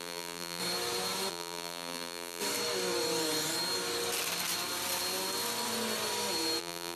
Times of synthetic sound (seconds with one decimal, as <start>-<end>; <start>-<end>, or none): 0.0-0.6; 1.3-2.4; 6.6-7.0

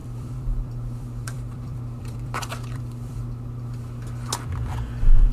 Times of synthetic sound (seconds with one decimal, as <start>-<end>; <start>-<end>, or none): 0.0-3.2

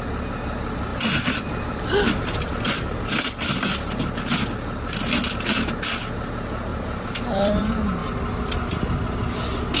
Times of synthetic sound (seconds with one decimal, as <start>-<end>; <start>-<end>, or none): 0.9-4.1; 6.7-7.6